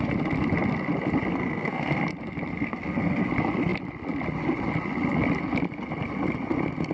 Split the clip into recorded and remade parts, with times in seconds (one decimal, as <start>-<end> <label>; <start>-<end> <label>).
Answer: 0.0-1.3 recorded; 1.3-2.1 remade; 2.1-2.5 recorded; 2.5-3.3 remade; 3.3-6.9 recorded